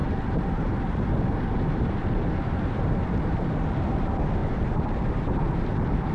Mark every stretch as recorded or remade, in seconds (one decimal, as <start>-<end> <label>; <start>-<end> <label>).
0.0-3.7 remade; 3.7-4.4 recorded; 4.4-5.1 remade; 5.1-6.1 recorded